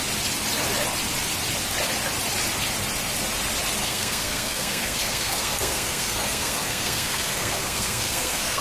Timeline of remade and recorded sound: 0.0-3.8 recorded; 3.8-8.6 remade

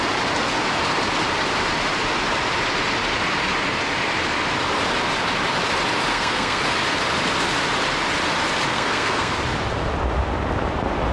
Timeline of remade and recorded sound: 0.0-6.1 recorded; 6.1-6.6 remade; 6.6-8.7 recorded; 8.7-9.3 remade; 9.3-11.1 recorded

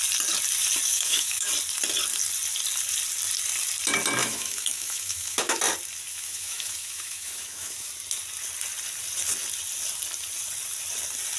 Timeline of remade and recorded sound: 0.0-0.9 recorded; 0.9-1.5 remade; 1.5-4.2 recorded; 4.2-5.6 remade; 5.6-6.1 recorded; 6.1-7.9 remade; 7.9-11.4 recorded

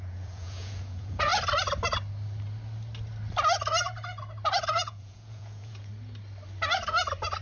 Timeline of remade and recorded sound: 0.0-1.3 remade; 1.3-4.6 recorded; 4.6-5.9 remade; 5.9-7.4 recorded

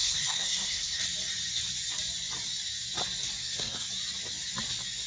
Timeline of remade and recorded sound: 0.0-1.0 remade; 1.0-3.4 recorded; 3.4-3.9 remade; 3.9-5.1 recorded

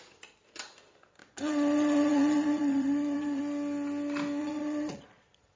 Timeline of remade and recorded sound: 0.0-1.2 recorded; 1.2-3.4 remade; 3.4-4.4 recorded; 4.4-5.6 remade